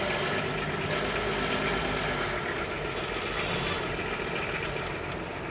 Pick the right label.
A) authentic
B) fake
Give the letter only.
A